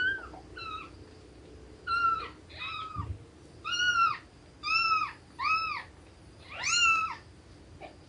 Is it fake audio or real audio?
real